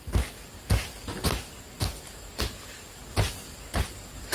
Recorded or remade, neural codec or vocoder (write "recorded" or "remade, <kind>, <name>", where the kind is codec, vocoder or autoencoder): recorded